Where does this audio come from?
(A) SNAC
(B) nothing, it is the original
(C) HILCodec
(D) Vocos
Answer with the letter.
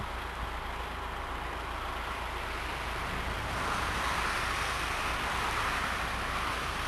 B